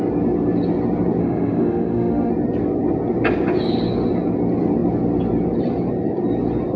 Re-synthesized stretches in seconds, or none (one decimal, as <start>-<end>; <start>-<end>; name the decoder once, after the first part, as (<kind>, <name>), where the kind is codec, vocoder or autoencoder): 1.2-2.3 (autoencoder, DAC-VAE)